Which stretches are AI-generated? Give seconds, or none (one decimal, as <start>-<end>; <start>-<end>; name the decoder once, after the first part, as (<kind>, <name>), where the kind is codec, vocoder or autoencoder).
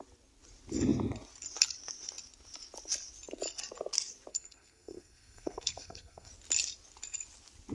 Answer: 4.3-6.3 (codec, SNAC)